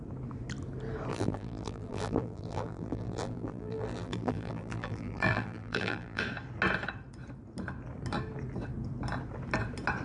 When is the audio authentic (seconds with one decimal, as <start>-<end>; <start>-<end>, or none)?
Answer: 0.0-1.1; 6.2-10.0